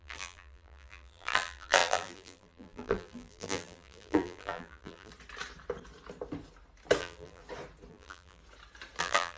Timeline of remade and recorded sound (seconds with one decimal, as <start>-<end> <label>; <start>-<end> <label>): 0.0-5.1 remade; 5.1-7.0 recorded; 7.0-7.4 remade; 7.4-7.9 recorded; 7.9-8.4 remade; 8.4-9.0 recorded; 9.0-9.4 remade